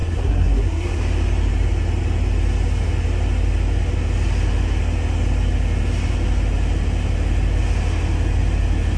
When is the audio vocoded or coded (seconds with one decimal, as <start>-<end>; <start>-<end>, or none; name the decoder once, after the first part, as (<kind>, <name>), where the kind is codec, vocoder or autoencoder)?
0.0-1.0 (codec, SNAC)